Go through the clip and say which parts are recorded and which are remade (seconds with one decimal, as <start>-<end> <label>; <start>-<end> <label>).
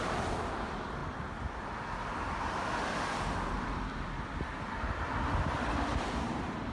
0.0-6.7 remade